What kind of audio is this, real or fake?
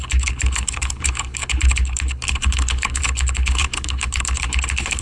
fake